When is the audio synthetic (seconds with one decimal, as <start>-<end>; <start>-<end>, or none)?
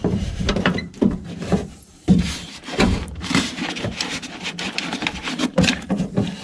0.0-1.2; 1.9-5.7